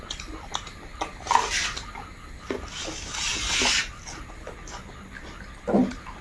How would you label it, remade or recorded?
recorded